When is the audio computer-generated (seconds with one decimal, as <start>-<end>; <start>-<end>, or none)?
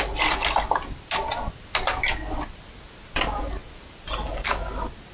none